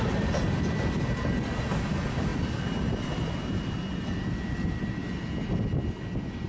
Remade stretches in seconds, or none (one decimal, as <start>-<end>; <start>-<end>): 2.3-2.9